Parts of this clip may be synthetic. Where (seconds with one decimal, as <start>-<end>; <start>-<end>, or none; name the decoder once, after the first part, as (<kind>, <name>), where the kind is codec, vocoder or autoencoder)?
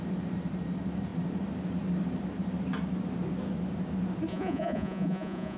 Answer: 4.3-5.6 (vocoder, Vocos)